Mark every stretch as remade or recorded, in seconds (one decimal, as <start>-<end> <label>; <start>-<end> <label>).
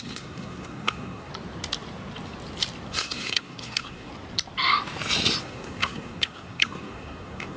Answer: 0.0-1.3 remade; 1.3-2.9 recorded; 2.9-4.1 remade; 4.1-5.4 recorded; 5.4-7.6 remade